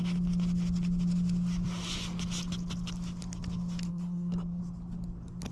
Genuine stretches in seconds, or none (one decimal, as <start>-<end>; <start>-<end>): 0.0-3.9; 4.6-5.5